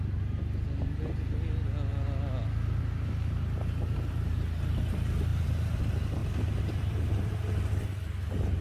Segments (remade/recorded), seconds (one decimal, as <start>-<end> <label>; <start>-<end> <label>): 0.0-6.2 recorded; 6.2-8.6 remade